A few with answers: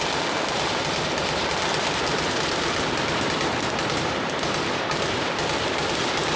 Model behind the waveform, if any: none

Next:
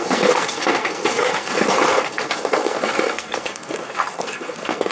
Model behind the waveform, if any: codec, SNAC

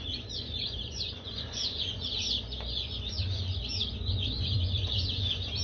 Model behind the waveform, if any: vocoder, Vocos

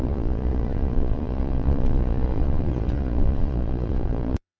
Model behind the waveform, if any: vocoder, Vocos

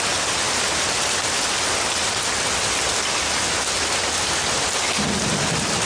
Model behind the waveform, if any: none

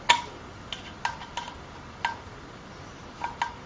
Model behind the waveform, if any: none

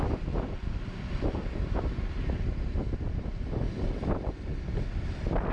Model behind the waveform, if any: none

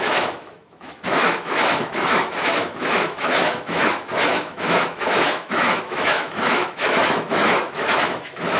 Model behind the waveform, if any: autoencoder, DAC-VAE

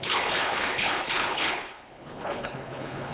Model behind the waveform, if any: codec, HILCodec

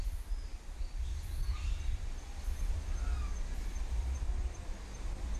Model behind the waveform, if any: none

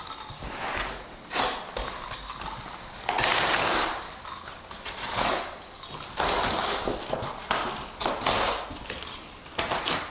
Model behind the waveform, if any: none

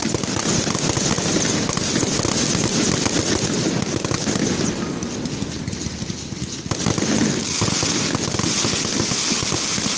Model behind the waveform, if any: none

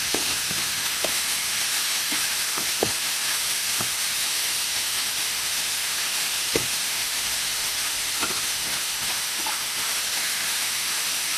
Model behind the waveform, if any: autoencoder, DAC-VAE